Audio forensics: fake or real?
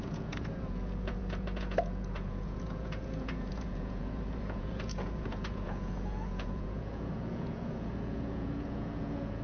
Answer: fake